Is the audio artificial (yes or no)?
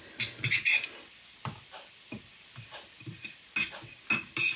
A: no